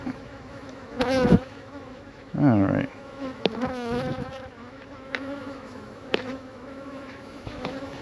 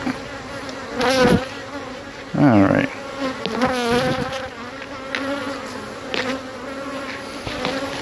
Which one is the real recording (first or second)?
second